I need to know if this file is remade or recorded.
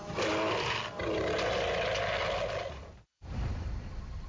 recorded